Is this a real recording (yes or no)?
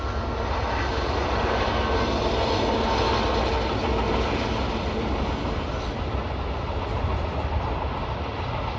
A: yes